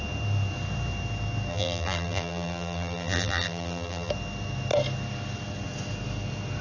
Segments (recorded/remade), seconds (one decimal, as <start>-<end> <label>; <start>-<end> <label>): 0.0-1.5 recorded; 1.5-4.1 remade; 4.1-6.6 recorded